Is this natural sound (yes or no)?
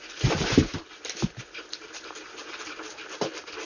no